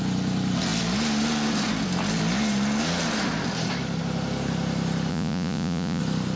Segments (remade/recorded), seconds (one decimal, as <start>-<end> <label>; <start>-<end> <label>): 0.0-5.1 recorded; 5.1-6.0 remade; 6.0-6.4 recorded